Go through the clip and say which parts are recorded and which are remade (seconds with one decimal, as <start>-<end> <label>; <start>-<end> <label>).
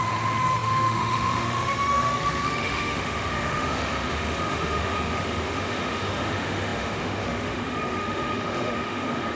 0.0-9.4 remade